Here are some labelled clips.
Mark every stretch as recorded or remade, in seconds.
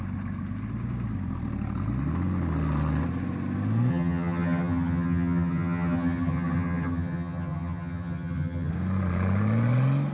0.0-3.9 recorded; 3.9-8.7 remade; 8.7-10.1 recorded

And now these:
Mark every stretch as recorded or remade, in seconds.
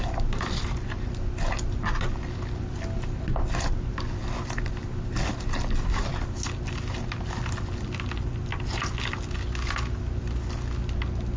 0.0-11.4 recorded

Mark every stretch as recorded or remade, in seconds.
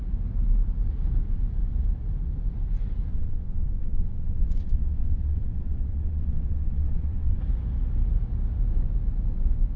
0.0-3.1 recorded; 3.1-7.4 remade; 7.4-9.8 recorded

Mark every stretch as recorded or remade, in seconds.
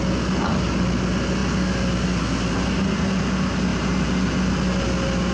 0.0-5.3 recorded